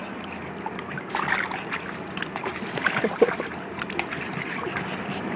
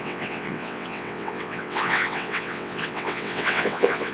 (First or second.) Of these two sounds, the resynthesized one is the second